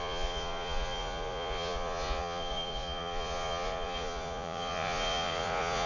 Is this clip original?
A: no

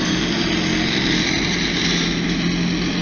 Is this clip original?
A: yes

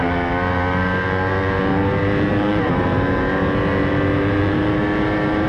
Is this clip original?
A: no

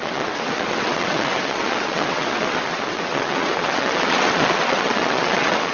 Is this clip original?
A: no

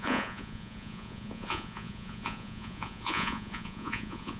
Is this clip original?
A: no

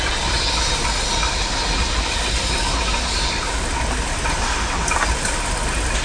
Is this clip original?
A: yes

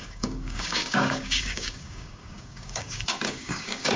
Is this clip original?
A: no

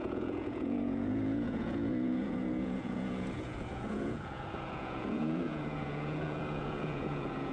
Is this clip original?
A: no